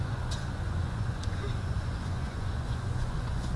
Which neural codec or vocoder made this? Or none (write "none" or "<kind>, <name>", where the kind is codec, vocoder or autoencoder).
vocoder, Vocos